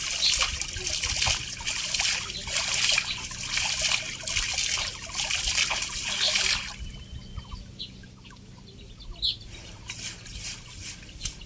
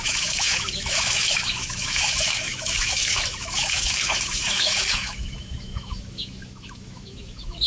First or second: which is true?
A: first